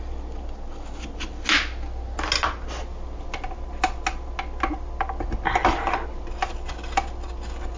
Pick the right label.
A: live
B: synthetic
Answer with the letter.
A